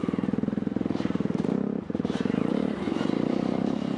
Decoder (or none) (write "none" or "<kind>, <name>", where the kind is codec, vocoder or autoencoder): vocoder, BigVGAN v2